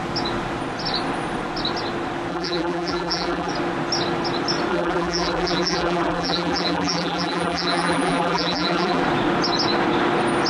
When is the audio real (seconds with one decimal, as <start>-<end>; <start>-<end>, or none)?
0.0-2.3; 3.5-4.7; 9.0-10.5